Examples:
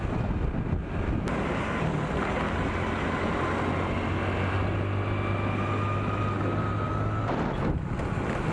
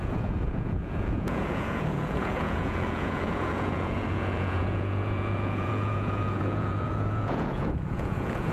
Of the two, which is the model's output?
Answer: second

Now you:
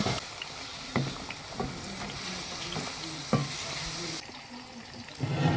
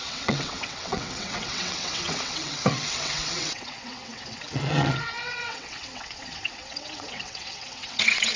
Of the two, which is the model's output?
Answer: second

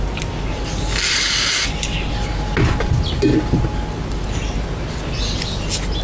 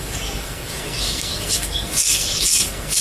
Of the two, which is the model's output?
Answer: second